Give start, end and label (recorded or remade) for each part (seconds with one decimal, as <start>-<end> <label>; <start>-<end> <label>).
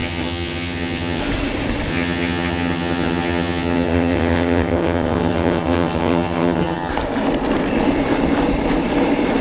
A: 0.0-1.2 remade; 1.2-1.9 recorded; 1.9-6.9 remade; 6.9-9.4 recorded